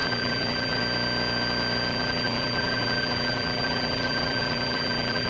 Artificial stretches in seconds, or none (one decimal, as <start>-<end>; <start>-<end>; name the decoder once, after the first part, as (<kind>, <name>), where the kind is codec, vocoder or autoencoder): 0.0-0.8 (vocoder, BigVGAN v2); 1.9-5.3